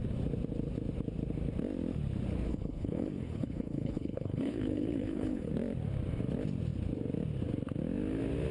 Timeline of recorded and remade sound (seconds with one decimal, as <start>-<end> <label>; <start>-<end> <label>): 0.0-2.5 recorded; 2.5-5.5 remade; 5.5-8.5 recorded